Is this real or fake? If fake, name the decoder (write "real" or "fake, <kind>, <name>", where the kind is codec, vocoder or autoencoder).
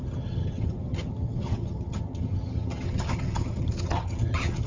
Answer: fake, vocoder, HiFi-GAN